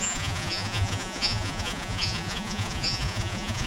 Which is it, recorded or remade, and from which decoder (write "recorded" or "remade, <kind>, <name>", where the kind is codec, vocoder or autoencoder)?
remade, vocoder, Vocos